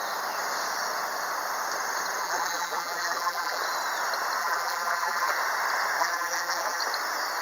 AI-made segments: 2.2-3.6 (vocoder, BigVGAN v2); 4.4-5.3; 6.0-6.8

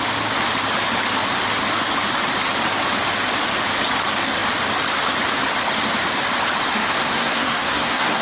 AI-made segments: 6.6-8.2 (codec, SNAC)

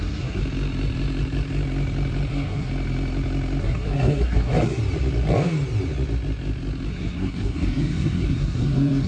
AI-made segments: 0.0-0.4 (codec, SNAC); 2.3-2.7; 3.6-4.8; 6.9-9.1

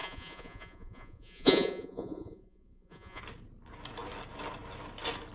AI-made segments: 0.0-3.2 (vocoder, Vocos)